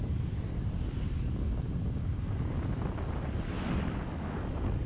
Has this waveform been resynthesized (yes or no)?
no